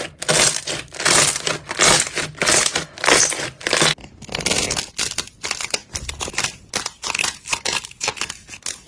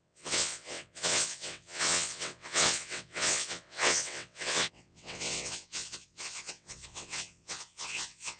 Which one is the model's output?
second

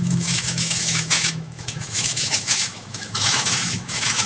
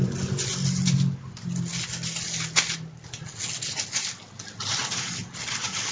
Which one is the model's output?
first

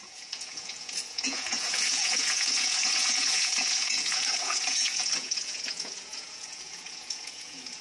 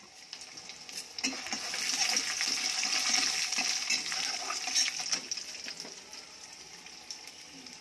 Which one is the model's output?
first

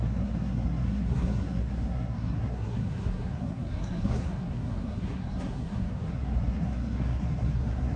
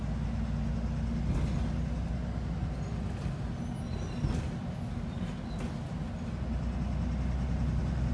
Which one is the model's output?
first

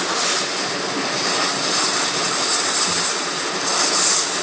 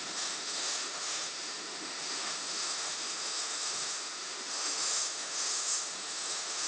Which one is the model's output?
second